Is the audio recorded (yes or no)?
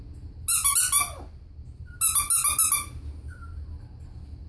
yes